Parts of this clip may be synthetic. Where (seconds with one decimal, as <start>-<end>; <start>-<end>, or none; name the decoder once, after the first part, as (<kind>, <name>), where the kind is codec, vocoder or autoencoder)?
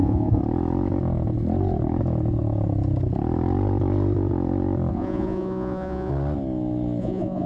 0.0-0.4 (vocoder, Vocos); 4.9-6.1; 7.0-7.5